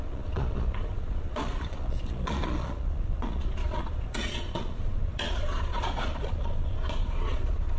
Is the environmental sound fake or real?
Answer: fake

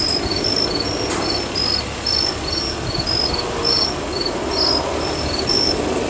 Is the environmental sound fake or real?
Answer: real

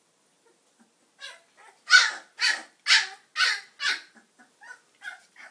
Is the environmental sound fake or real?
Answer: real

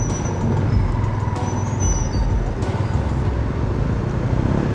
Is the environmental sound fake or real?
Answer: real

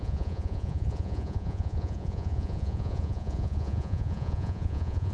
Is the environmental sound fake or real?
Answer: fake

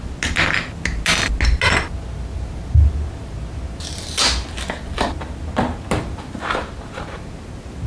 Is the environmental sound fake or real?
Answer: real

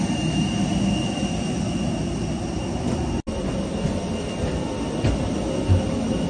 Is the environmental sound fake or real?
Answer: real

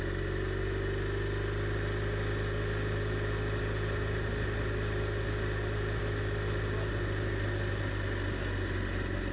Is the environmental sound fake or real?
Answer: real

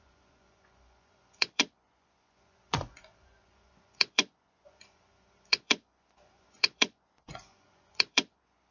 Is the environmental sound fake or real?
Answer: fake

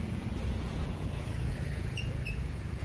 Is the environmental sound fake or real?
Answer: fake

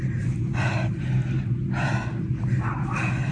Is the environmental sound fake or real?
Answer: real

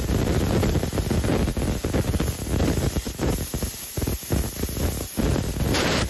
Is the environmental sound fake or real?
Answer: real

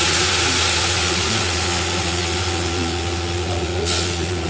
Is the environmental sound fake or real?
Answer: fake